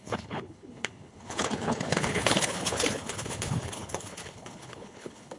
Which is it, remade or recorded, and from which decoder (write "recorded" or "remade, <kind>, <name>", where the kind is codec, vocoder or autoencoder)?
remade, codec, HILCodec